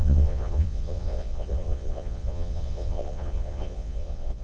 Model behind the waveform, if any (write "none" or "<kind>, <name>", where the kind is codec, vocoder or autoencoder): vocoder, Vocos